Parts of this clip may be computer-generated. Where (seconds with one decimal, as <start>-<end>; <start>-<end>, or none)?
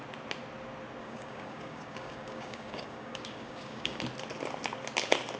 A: 1.0-4.0